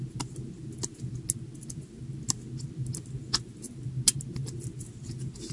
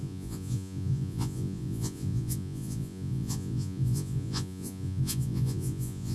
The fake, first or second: second